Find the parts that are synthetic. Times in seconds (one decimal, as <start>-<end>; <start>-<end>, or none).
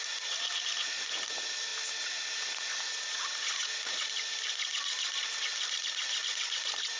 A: 0.0-1.7; 2.9-4.7; 5.4-7.0